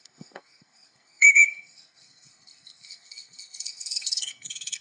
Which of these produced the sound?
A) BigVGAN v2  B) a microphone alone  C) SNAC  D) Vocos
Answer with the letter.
C